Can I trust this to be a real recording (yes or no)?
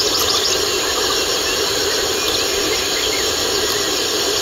yes